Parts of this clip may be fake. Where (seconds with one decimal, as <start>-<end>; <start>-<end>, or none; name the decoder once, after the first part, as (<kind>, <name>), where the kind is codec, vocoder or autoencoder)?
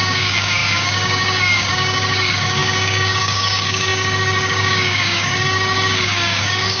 0.0-6.8 (codec, DAC)